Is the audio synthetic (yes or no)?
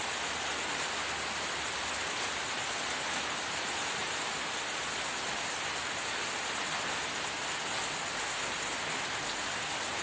no